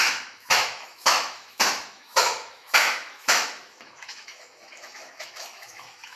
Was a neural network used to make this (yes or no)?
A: yes